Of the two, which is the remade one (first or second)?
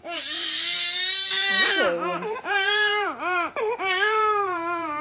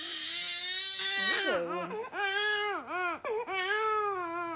first